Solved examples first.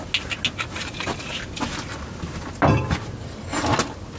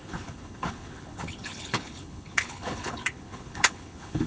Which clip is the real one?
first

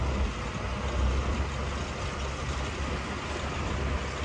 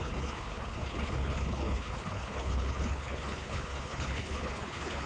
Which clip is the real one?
first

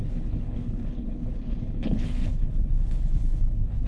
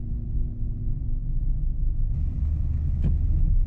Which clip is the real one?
second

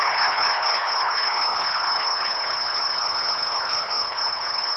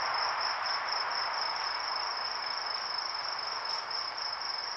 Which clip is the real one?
second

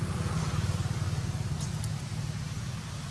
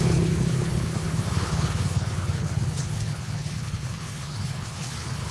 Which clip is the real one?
first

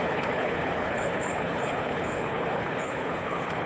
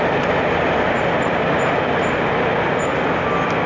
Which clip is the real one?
second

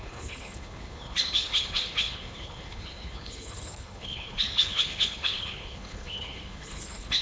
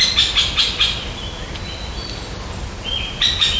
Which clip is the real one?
second